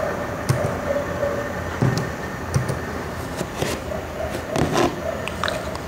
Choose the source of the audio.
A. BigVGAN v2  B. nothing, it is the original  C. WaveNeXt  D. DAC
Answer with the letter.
B